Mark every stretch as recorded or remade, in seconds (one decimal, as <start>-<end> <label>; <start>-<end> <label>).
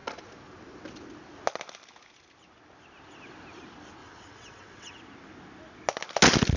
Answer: 0.0-4.0 recorded; 4.0-5.0 remade; 5.0-6.6 recorded